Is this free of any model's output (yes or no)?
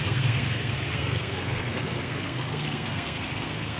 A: no